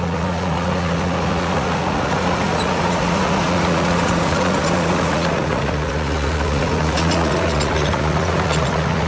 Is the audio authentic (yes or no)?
no